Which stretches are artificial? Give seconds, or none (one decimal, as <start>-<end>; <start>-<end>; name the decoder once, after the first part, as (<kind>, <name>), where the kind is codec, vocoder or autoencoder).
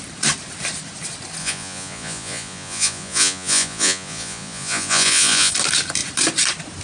1.4-5.5 (vocoder, Vocos)